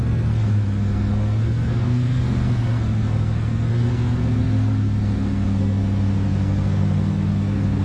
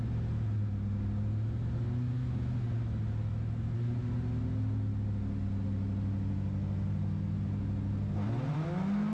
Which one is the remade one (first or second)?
first